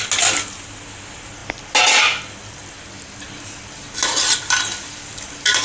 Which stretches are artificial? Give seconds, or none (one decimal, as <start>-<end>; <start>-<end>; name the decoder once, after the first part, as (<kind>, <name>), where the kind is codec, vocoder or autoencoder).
none